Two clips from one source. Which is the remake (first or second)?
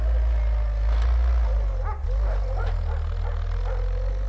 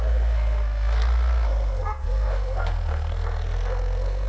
second